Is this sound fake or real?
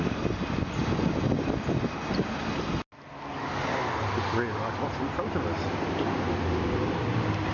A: real